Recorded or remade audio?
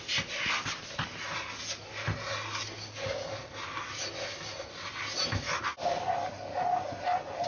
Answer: recorded